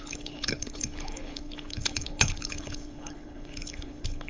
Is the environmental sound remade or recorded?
remade